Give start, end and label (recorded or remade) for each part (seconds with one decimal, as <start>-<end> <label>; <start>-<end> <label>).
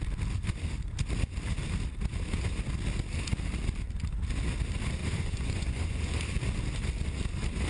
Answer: 0.0-5.0 recorded; 5.0-6.2 remade; 6.2-7.7 recorded